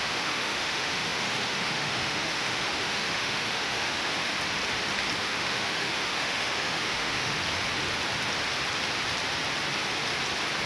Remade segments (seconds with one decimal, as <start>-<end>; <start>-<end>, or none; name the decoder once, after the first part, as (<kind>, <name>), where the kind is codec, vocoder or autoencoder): 0.0-4.3 (autoencoder, DAC-VAE); 5.2-7.3